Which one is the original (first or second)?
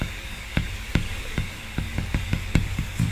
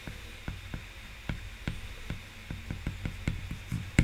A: second